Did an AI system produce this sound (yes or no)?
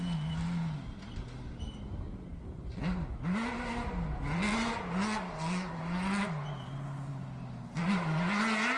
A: no